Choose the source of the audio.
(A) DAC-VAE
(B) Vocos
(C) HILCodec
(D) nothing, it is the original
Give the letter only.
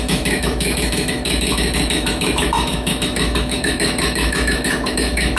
A